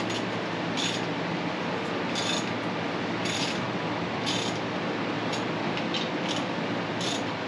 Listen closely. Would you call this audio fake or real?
real